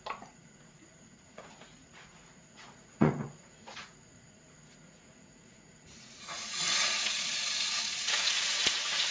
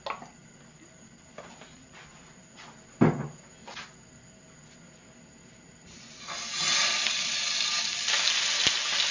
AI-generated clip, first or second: first